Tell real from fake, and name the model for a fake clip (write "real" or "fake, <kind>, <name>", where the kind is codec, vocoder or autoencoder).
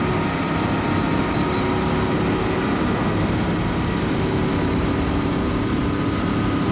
real